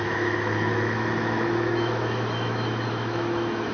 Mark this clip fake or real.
fake